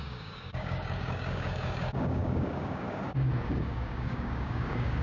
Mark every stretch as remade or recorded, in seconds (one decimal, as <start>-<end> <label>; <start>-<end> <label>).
0.0-5.0 remade